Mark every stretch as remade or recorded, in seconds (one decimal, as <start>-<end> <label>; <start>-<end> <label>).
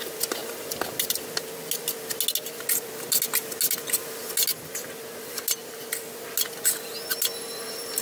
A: 0.0-8.0 recorded